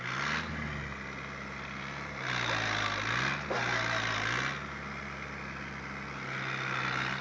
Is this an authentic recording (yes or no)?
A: yes